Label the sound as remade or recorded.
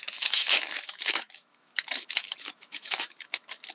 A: remade